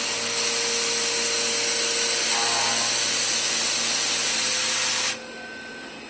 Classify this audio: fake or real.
real